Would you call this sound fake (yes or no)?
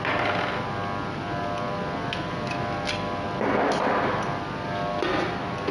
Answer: no